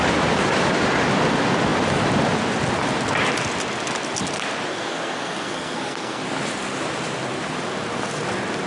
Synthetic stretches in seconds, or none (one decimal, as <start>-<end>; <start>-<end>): 4.7-6.2